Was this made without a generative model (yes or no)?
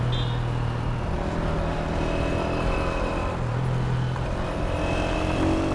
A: yes